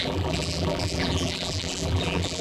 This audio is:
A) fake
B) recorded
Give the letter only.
A